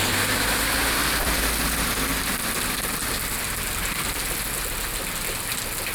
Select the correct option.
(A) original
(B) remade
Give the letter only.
A